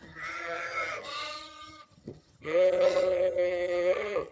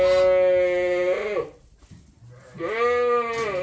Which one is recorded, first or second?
second